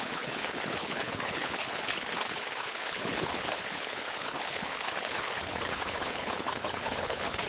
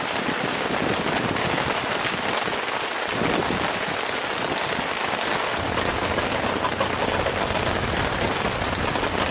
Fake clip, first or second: first